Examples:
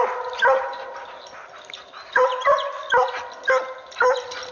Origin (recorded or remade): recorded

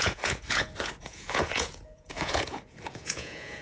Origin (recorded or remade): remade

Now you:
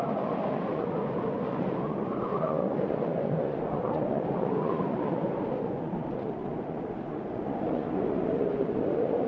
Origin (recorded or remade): remade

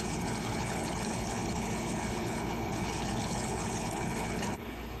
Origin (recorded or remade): remade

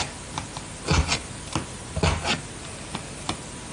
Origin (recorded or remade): recorded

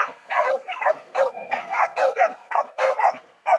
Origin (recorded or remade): remade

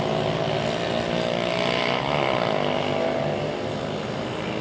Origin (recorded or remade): recorded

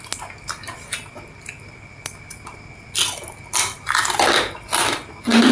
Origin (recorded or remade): recorded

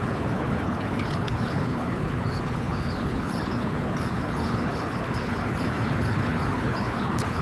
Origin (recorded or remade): remade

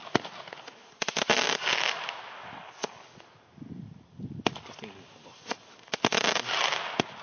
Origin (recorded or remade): recorded